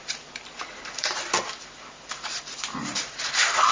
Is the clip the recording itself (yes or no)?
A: no